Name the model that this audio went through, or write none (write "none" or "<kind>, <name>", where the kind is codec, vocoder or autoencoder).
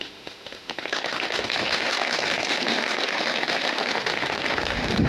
autoencoder, DAC-VAE